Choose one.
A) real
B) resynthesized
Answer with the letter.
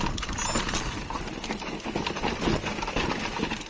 A